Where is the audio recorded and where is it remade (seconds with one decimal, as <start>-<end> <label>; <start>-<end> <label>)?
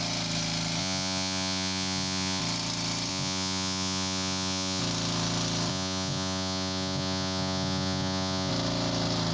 0.0-0.8 recorded; 0.8-2.4 remade; 2.4-3.1 recorded; 3.1-4.8 remade; 4.8-5.7 recorded; 5.7-8.5 remade; 8.5-9.3 recorded